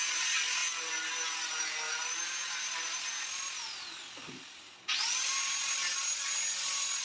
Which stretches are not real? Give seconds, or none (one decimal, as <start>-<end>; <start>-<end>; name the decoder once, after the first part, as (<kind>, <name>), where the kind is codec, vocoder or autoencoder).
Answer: none